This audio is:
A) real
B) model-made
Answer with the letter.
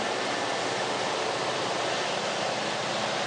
A